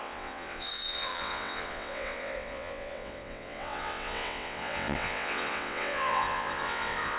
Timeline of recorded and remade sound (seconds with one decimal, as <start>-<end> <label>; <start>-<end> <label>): 0.0-7.2 remade